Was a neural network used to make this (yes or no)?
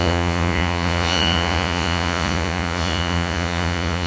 yes